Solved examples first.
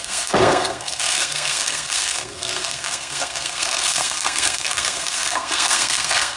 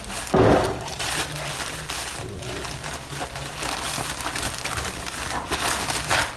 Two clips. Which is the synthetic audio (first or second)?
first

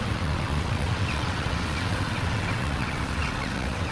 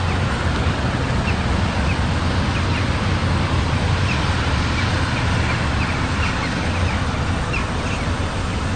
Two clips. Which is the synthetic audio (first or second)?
first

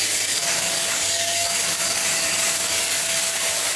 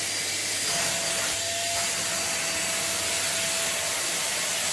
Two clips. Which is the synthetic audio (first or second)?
first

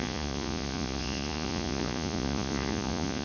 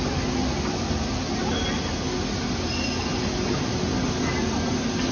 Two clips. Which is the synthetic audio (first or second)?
first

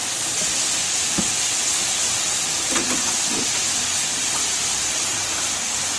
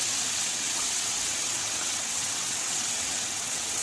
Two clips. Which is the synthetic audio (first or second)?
second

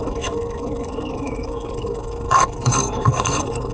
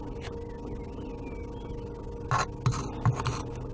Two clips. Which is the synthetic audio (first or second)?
first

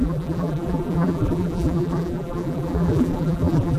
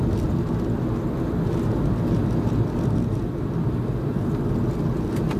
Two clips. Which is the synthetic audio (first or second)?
first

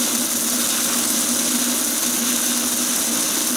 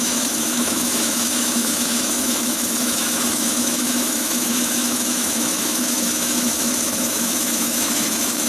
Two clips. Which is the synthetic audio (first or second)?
second